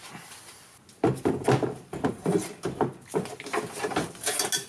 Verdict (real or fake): real